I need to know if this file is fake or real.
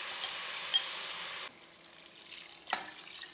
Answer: real